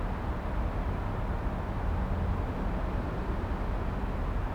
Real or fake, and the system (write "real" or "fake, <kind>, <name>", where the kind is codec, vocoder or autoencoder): real